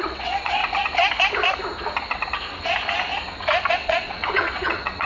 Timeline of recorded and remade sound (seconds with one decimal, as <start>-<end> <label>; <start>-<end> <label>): 0.0-0.6 remade; 0.6-3.7 recorded; 3.7-5.1 remade